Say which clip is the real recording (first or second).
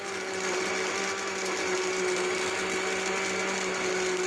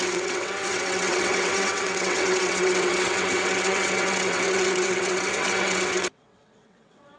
first